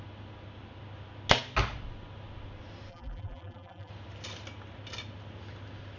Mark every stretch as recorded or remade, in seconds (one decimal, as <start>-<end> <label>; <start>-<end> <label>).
0.0-2.9 recorded; 2.9-3.9 remade; 3.9-6.0 recorded